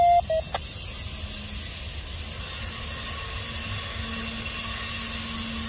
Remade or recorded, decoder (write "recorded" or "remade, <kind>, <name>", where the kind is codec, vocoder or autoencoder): recorded